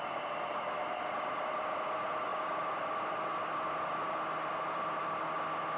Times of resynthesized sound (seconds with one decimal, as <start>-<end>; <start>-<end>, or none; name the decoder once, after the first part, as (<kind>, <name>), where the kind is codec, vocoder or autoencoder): none